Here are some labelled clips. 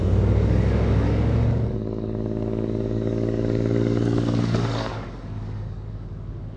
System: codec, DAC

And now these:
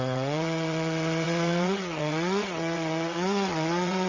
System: vocoder, WaveNeXt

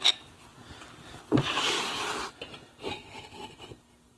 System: none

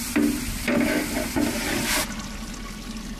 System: none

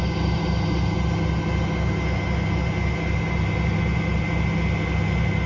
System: none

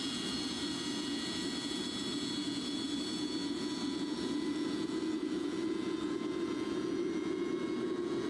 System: vocoder, Vocos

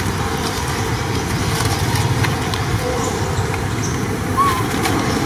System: none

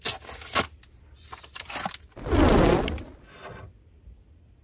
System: none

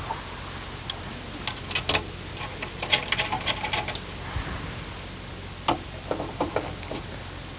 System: none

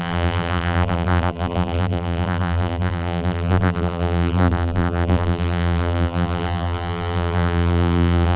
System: vocoder, BigVGAN v2